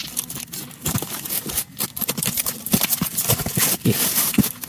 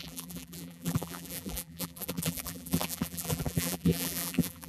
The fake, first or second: second